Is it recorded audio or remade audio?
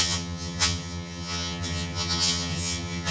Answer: remade